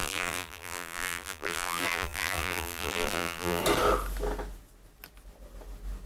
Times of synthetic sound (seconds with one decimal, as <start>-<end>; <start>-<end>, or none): 0.0-3.6